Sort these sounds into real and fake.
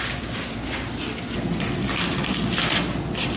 real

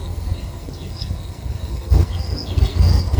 fake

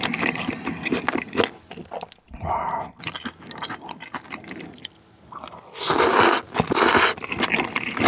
real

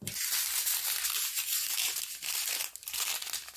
real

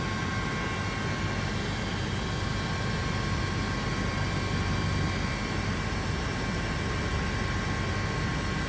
real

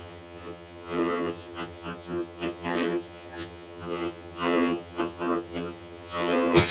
fake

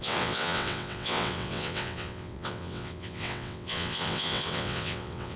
fake